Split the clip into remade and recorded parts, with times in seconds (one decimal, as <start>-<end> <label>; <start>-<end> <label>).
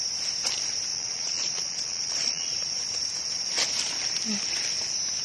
0.0-0.9 recorded; 0.9-2.5 remade; 2.5-5.2 recorded